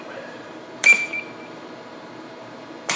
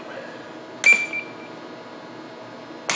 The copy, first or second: first